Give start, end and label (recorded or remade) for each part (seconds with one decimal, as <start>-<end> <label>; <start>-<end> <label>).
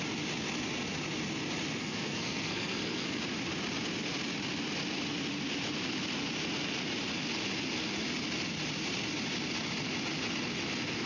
0.0-1.8 recorded; 1.8-3.2 remade; 3.2-11.1 recorded